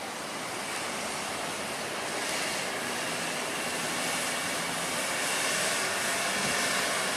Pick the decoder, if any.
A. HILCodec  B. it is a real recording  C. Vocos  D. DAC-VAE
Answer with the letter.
B